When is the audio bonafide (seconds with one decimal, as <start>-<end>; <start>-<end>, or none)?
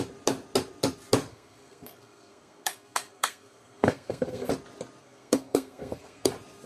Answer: 0.0-1.3; 4.5-5.0; 6.3-6.7